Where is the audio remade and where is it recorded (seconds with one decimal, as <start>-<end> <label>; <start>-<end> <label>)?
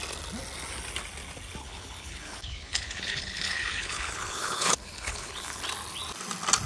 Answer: 0.0-1.6 recorded; 1.6-5.6 remade; 5.6-6.7 recorded